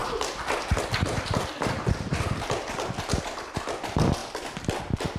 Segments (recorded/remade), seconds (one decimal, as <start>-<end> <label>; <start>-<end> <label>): 0.0-5.2 recorded